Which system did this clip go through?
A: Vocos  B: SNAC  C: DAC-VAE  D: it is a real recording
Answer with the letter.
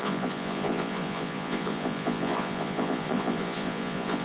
A